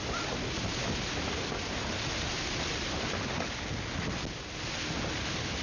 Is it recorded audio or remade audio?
recorded